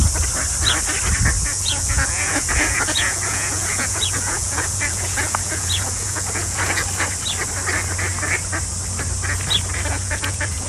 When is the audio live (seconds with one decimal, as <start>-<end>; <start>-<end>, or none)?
0.0-1.5; 6.7-9.9